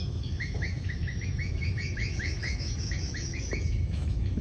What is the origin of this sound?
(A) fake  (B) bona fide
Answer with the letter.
A